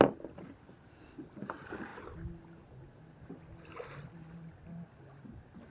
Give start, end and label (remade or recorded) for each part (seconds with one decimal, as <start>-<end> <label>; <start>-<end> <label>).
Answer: 0.0-5.7 recorded